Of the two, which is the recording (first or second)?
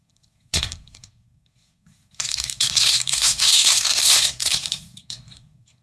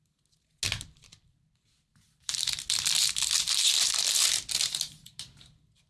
second